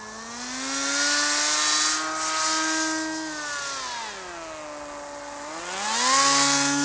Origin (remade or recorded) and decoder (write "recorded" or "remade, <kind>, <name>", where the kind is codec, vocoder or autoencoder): recorded